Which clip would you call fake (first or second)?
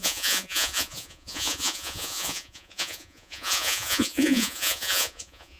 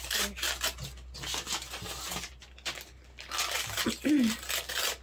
first